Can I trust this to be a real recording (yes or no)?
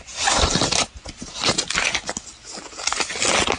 yes